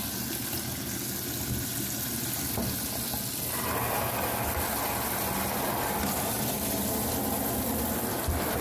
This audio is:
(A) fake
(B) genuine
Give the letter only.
B